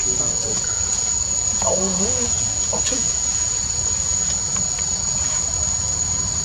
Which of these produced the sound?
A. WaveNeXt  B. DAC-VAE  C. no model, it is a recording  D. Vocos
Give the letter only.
D